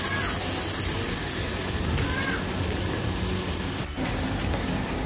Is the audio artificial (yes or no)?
no